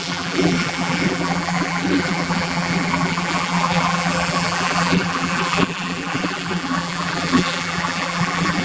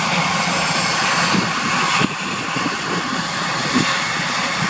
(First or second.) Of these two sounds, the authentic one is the second